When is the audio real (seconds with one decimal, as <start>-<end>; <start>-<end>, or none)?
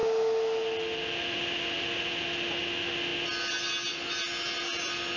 0.0-5.2